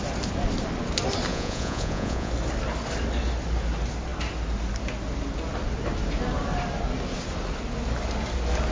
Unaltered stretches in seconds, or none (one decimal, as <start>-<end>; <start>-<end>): 0.0-1.3; 2.3-8.7